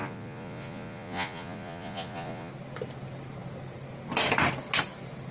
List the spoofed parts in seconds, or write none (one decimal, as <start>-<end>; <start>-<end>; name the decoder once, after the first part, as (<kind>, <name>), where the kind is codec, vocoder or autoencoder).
0.0-2.5 (vocoder, Vocos)